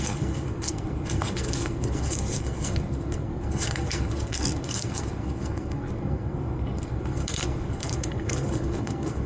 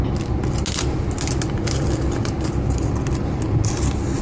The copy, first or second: first